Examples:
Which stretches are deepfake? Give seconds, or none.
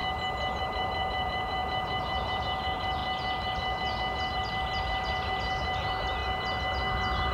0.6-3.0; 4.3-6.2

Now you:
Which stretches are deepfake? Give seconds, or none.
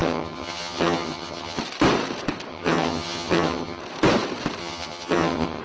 0.0-1.6; 2.5-3.8; 4.6-5.6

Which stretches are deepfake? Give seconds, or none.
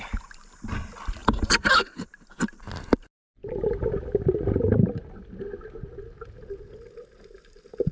1.2-2.1; 3.4-4.7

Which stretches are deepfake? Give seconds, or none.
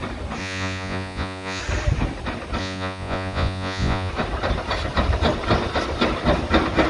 0.4-1.6; 2.6-4.1